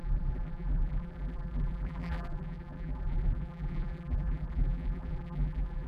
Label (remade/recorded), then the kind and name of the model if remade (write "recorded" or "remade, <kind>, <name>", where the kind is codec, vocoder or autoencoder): remade, vocoder, BigVGAN v2